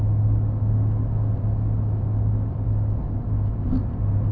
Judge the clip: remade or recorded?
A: recorded